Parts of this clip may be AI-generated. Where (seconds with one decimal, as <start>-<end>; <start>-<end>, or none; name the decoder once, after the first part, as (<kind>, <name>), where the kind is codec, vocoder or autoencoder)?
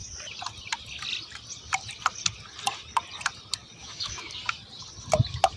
3.8-4.3 (autoencoder, DAC-VAE)